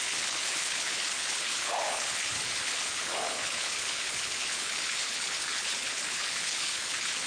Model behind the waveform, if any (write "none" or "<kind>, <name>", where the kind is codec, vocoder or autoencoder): codec, HILCodec